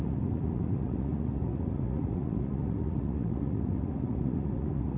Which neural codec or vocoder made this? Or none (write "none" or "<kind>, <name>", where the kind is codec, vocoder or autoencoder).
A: vocoder, Vocos